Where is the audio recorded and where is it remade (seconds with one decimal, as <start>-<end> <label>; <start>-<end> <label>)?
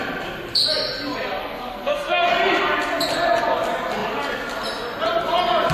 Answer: 0.0-1.4 recorded; 1.4-2.3 remade; 2.3-5.7 recorded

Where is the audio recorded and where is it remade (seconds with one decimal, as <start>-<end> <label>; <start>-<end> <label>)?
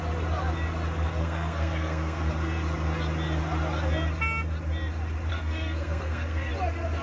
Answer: 0.0-1.2 recorded; 1.2-2.3 remade; 2.3-5.3 recorded; 5.3-6.5 remade; 6.5-7.0 recorded